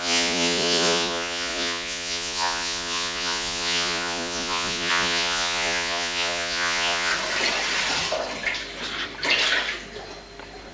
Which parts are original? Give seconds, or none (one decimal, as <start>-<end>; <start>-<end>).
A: 7.1-10.7